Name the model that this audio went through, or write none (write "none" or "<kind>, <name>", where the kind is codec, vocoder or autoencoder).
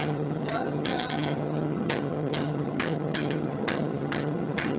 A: vocoder, HiFi-GAN